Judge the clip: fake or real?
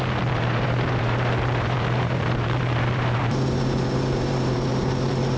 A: fake